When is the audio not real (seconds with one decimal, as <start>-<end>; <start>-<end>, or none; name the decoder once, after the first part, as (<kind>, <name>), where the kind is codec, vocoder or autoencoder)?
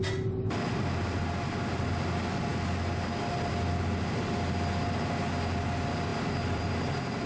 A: 6.1-6.7 (vocoder, BigVGAN v2)